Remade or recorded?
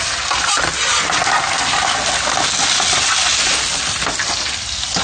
recorded